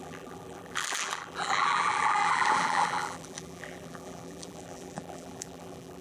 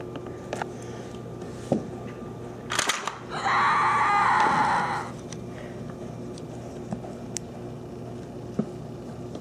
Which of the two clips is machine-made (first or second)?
first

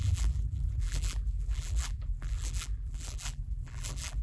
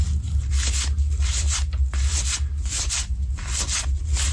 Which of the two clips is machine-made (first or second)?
first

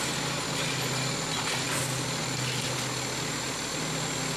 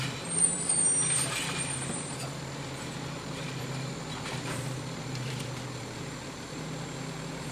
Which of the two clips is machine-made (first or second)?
second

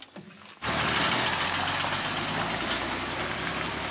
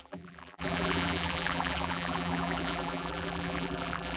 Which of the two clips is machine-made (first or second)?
second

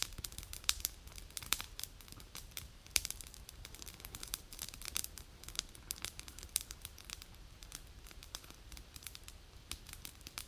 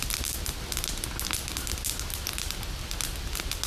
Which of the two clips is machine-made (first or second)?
first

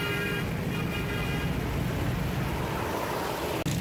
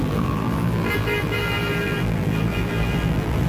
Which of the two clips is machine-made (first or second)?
second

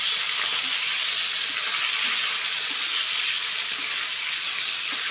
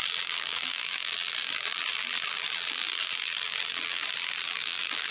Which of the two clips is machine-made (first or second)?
second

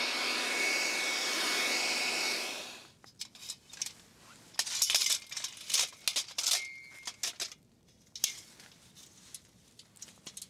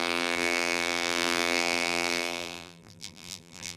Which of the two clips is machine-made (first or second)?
second